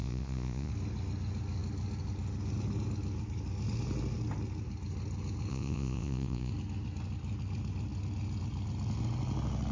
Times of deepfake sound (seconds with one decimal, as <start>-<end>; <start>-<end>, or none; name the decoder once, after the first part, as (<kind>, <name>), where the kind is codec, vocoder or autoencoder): 0.0-0.7 (vocoder, Vocos); 5.5-6.5